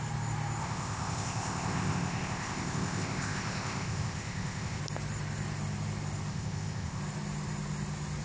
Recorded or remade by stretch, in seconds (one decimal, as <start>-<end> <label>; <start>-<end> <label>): 0.0-0.6 recorded; 0.6-4.8 remade; 4.8-6.3 recorded; 6.3-7.0 remade; 7.0-8.2 recorded